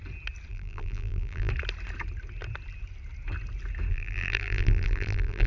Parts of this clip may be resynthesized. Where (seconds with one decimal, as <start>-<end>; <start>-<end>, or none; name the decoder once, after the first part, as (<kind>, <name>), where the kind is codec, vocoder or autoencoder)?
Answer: 0.5-1.5 (vocoder, BigVGAN v2); 3.9-5.5